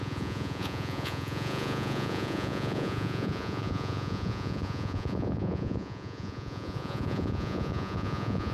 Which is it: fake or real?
fake